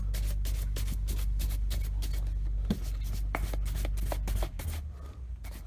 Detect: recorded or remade recorded